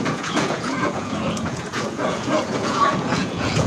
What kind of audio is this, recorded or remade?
remade